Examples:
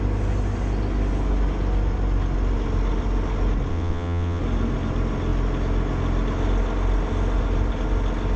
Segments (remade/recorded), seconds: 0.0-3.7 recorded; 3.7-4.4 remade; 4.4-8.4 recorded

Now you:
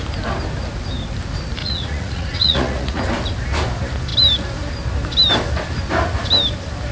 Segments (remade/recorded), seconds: 0.0-1.6 recorded; 1.6-3.0 remade; 3.0-6.9 recorded

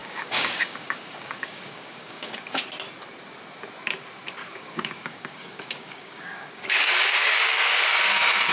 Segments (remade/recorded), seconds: 0.0-2.6 remade; 2.6-4.4 recorded; 4.4-8.5 remade

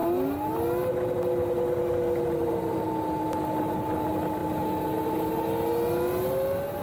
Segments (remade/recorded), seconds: 0.0-6.8 recorded

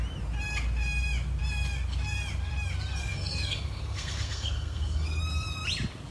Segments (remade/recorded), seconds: 0.0-3.0 recorded; 3.0-5.2 remade; 5.2-6.1 recorded

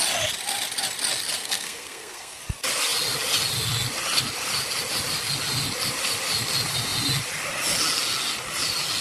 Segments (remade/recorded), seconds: 0.0-1.4 recorded; 1.4-2.4 remade; 2.4-9.0 recorded